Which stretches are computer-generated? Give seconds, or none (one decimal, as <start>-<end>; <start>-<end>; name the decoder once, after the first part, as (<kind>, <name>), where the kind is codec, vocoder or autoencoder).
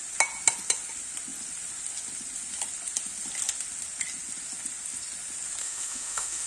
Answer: 5.6-6.5 (autoencoder, DAC-VAE)